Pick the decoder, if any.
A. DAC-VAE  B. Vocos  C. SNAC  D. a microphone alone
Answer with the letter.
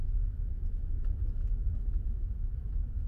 A